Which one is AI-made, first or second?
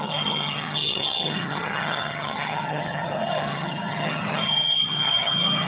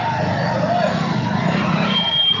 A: first